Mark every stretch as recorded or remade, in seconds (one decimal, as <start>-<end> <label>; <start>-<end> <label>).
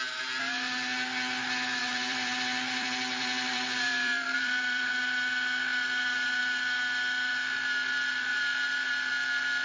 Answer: 0.0-1.8 recorded; 1.8-4.9 remade; 4.9-8.3 recorded; 8.3-8.9 remade; 8.9-9.6 recorded